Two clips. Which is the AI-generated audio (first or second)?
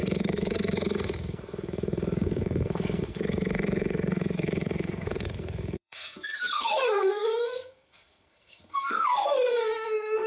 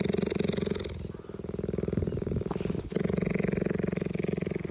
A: first